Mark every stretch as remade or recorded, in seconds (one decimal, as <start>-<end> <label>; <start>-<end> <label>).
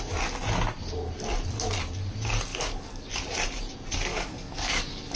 0.0-2.5 recorded; 2.5-3.1 remade; 3.1-4.1 recorded; 4.1-5.2 remade